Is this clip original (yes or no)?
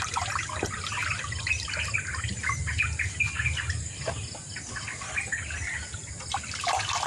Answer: yes